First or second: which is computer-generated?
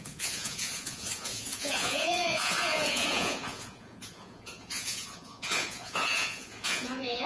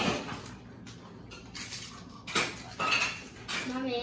first